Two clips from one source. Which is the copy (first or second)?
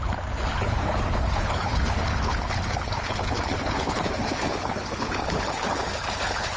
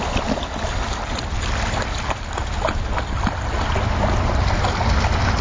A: first